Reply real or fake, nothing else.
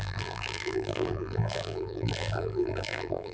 fake